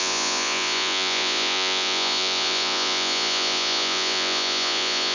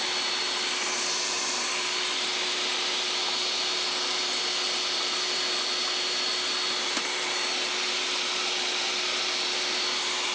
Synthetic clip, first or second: first